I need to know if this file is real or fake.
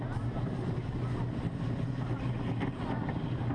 real